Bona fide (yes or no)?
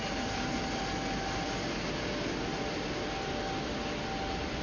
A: yes